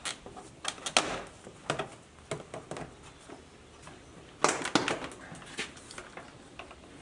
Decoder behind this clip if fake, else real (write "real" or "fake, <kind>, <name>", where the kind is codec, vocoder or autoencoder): real